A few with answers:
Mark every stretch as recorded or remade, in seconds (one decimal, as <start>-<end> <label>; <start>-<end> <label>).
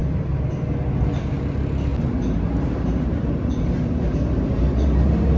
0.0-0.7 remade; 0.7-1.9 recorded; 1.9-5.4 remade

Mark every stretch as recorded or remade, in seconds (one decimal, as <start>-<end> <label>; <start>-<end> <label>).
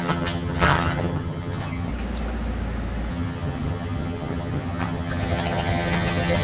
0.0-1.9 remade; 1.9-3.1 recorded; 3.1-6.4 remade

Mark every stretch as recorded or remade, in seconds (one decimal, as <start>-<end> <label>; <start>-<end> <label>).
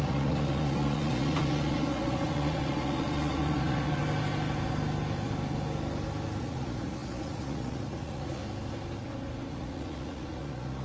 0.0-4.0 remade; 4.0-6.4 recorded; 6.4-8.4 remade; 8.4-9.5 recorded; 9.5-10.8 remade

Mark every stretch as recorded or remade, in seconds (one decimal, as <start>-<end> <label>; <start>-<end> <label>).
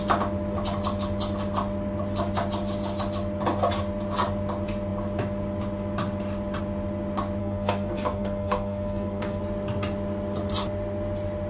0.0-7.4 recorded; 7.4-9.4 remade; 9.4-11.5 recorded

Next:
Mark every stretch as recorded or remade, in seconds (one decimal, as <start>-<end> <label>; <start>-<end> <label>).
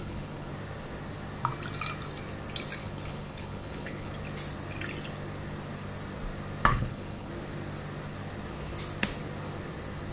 0.0-0.5 remade; 0.5-2.8 recorded; 2.8-4.1 remade; 4.1-6.7 recorded; 6.7-7.3 remade; 7.3-10.1 recorded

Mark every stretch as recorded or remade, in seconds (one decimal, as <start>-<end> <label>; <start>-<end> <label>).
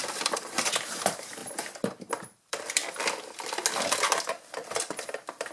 0.0-1.4 remade; 1.4-2.0 recorded; 2.0-2.8 remade; 2.8-5.0 recorded; 5.0-5.5 remade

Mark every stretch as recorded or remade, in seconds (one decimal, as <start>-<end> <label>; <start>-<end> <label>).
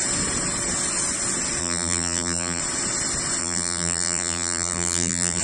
0.0-1.6 recorded; 1.6-2.6 remade; 2.6-3.4 recorded; 3.4-5.4 remade